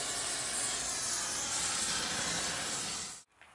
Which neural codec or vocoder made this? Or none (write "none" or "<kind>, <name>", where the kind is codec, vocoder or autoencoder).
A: none